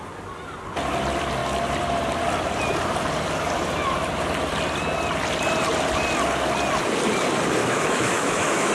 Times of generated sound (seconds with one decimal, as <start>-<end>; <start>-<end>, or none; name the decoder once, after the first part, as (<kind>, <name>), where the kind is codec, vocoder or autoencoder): 7.6-8.7 (autoencoder, DAC-VAE)